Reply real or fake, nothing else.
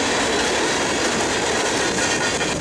real